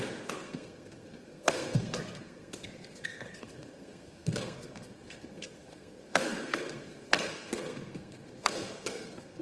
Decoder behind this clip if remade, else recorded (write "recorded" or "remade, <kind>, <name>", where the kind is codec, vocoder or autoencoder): remade, codec, SNAC